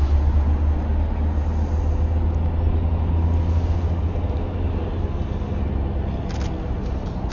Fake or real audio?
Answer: real